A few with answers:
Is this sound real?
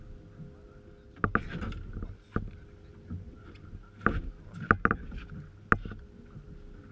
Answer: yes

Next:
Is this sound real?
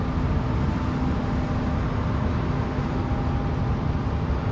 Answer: yes